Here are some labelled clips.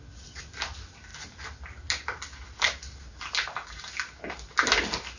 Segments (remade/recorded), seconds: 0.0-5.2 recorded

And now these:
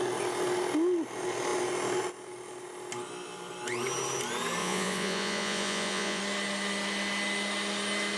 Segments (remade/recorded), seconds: 0.0-4.6 recorded; 4.6-6.2 remade; 6.2-8.2 recorded